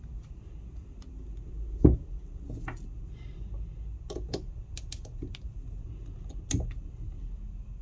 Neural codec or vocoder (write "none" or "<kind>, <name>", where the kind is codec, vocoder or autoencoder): none